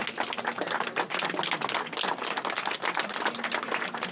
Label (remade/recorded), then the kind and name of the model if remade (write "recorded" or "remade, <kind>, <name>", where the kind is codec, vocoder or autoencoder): recorded